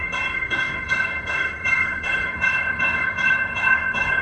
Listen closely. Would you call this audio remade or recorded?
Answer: remade